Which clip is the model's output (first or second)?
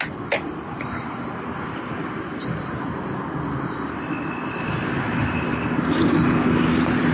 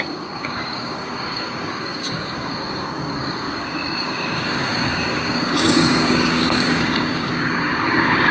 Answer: second